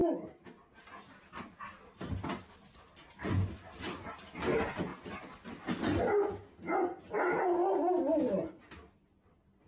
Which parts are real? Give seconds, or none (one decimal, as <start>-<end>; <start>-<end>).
0.0-7.6; 8.6-9.7